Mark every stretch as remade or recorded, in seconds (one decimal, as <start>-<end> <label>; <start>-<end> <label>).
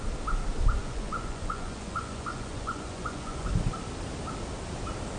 0.0-0.8 recorded; 0.8-3.5 remade; 3.5-5.2 recorded